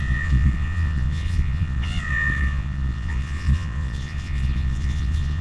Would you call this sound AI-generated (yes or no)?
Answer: yes